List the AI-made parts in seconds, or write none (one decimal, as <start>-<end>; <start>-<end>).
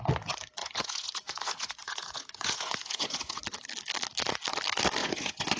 0.6-3.4; 5.0-5.6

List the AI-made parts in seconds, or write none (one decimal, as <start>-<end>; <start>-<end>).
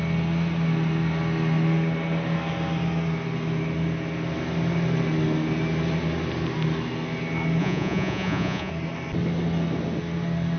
7.6-8.7